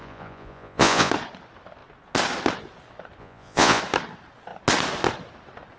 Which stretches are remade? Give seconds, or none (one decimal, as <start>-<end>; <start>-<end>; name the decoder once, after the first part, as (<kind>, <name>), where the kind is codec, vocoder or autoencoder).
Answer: 0.0-1.1 (vocoder, Vocos); 3.2-3.8